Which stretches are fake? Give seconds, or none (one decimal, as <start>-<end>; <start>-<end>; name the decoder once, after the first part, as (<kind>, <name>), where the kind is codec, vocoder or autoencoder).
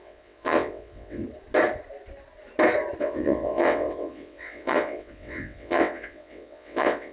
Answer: 0.0-1.2 (vocoder, WaveNeXt); 3.0-7.1